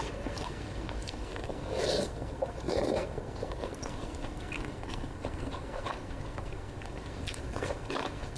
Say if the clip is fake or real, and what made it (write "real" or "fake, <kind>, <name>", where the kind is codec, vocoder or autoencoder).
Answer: fake, codec, SNAC